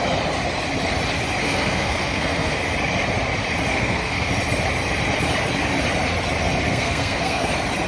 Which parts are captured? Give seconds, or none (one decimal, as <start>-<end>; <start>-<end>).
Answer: 0.0-1.4; 2.6-3.7; 4.3-6.7; 7.5-7.9